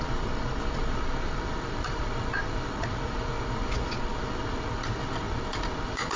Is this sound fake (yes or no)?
yes